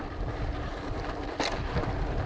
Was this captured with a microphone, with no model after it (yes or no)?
yes